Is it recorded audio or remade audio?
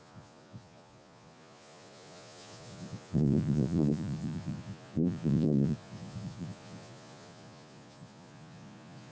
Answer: remade